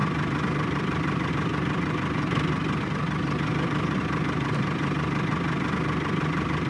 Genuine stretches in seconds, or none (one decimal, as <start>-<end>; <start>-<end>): none